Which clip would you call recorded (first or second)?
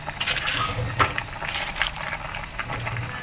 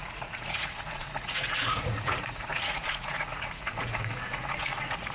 first